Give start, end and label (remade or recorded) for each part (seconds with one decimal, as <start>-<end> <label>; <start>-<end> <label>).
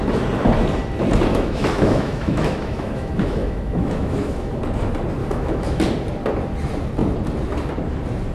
0.0-1.3 recorded; 1.3-4.6 remade; 4.6-5.2 recorded; 5.2-5.8 remade; 5.8-8.3 recorded